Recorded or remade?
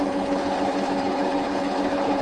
remade